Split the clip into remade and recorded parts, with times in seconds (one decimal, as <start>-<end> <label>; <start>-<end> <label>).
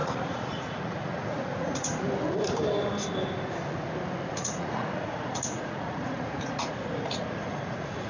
0.0-2.0 remade; 2.0-4.3 recorded; 4.3-8.1 remade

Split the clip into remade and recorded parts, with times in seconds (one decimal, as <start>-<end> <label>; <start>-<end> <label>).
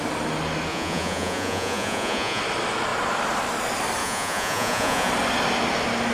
0.0-0.7 recorded; 0.7-2.4 remade; 2.4-4.0 recorded; 4.0-5.1 remade; 5.1-6.1 recorded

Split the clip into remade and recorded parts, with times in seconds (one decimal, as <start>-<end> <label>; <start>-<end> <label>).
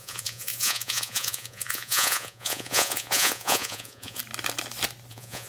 0.0-4.2 remade; 4.2-5.1 recorded; 5.1-5.5 remade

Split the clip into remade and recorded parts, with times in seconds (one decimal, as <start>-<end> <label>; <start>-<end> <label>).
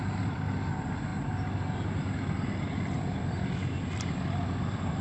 0.0-5.0 recorded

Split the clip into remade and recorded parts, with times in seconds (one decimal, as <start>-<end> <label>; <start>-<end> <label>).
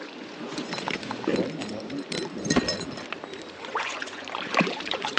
0.0-1.3 remade; 1.3-3.6 recorded; 3.6-5.2 remade